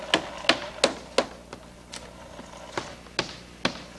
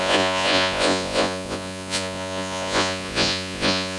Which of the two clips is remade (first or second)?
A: second